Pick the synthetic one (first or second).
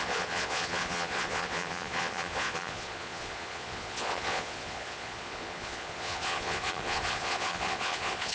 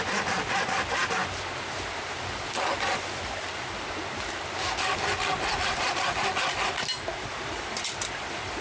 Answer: first